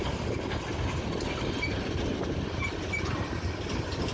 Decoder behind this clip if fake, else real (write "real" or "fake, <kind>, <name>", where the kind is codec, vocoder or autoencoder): real